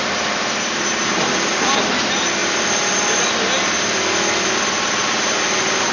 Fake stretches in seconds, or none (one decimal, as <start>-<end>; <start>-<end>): none